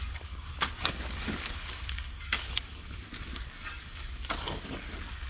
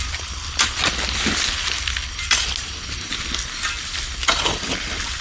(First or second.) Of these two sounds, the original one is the second